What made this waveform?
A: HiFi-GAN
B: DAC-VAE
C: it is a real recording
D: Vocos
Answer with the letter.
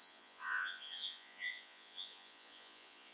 D